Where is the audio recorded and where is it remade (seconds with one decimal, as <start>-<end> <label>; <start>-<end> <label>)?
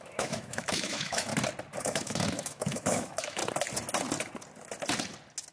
0.0-1.3 remade; 1.3-1.8 recorded; 1.8-3.4 remade; 3.4-5.5 recorded